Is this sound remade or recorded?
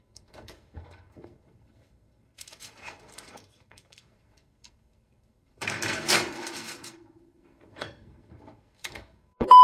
remade